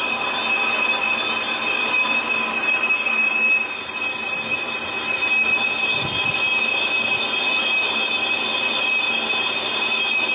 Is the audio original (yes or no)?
yes